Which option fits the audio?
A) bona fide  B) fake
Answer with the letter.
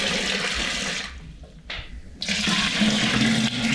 A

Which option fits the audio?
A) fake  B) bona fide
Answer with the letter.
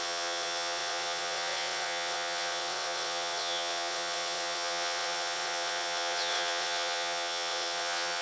A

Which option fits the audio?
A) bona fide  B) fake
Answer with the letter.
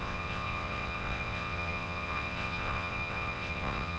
B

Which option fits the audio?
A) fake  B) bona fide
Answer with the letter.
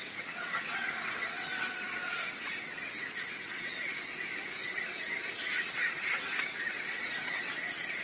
A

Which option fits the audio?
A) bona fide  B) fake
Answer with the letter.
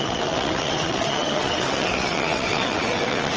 B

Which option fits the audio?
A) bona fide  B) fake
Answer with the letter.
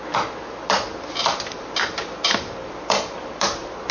A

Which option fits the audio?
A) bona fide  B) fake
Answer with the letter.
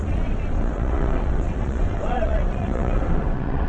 B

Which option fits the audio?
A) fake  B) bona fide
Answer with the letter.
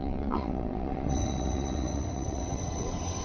A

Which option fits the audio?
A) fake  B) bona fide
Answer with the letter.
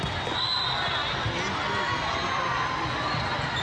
B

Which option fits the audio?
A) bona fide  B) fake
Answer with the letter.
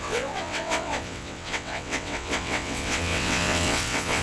B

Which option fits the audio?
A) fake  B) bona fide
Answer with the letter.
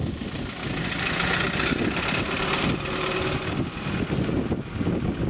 B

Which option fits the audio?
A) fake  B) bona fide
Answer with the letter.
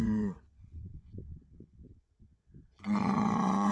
A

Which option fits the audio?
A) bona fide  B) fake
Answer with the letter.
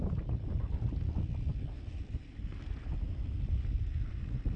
A